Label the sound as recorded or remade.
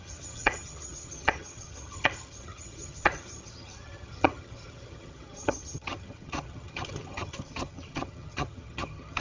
remade